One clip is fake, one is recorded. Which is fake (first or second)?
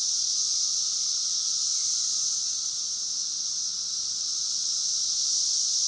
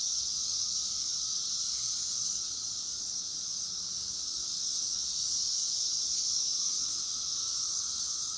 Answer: second